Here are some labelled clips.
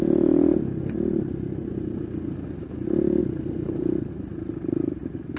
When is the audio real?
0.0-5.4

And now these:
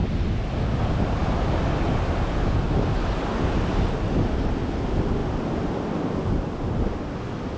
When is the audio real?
0.0-7.6

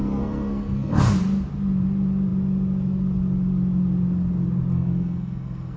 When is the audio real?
1.0-4.7

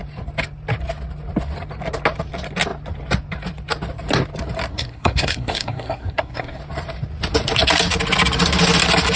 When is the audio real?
0.0-4.7; 6.6-9.2

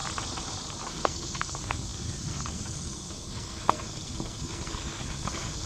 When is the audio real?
0.0-0.9

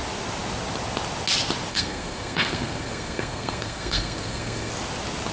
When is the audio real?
0.0-1.7; 4.7-5.3

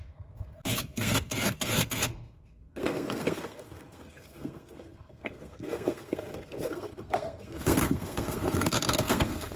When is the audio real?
none